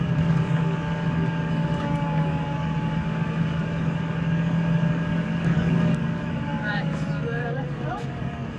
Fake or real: fake